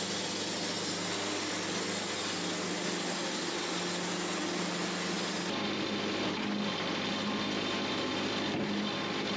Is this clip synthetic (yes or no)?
no